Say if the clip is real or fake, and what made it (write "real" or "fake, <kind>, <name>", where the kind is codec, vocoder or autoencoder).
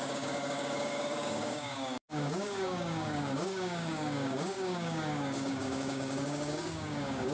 fake, codec, DAC